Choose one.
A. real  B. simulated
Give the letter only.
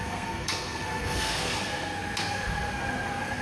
B